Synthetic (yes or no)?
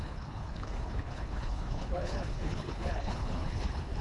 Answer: yes